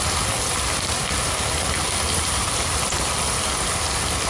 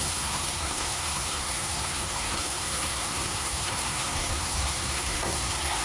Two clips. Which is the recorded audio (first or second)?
first